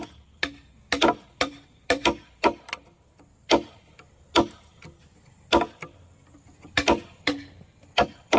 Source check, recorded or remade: recorded